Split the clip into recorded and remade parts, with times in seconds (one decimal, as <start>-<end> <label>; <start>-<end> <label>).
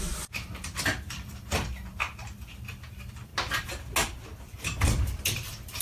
0.0-3.3 remade; 3.3-4.4 recorded; 4.4-5.8 remade